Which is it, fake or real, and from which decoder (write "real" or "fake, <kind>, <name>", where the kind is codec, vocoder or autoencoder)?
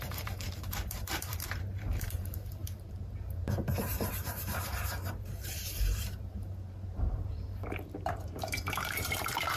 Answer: fake, vocoder, BigVGAN v2